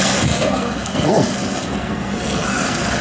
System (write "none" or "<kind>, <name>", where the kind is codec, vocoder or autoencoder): codec, SNAC